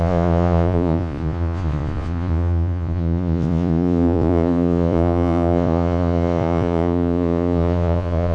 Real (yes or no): no